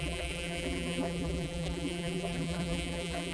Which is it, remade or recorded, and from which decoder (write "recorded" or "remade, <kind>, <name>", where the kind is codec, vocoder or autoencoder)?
remade, vocoder, BigVGAN v2